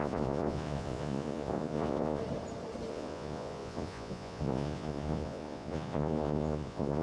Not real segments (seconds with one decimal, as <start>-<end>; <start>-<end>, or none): 0.0-2.2; 2.9-7.0